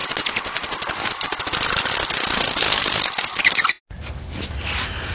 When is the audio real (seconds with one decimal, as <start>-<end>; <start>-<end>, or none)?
0.0-5.1